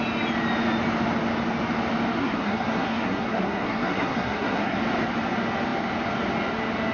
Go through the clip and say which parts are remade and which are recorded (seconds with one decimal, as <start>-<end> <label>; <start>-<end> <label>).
0.0-2.2 recorded; 2.2-4.8 remade; 4.8-6.9 recorded